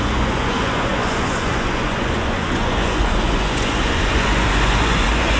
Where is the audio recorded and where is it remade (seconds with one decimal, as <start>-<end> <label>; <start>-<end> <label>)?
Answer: 0.0-5.4 remade